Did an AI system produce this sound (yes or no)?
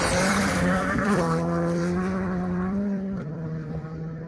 yes